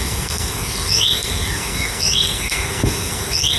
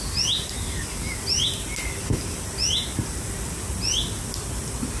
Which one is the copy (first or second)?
first